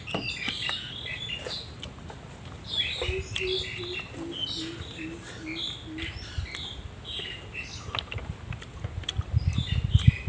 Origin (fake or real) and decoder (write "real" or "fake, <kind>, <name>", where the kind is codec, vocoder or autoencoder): real